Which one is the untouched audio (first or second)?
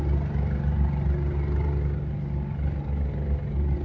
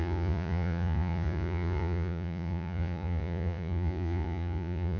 first